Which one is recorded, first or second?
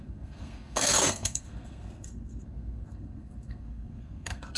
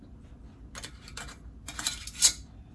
second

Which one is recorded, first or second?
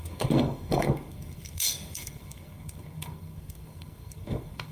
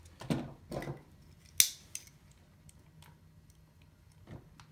second